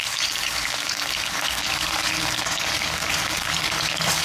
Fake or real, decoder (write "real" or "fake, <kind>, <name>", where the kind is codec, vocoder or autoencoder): fake, codec, DAC